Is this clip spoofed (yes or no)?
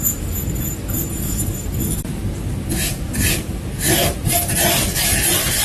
no